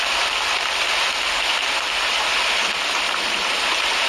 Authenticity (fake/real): real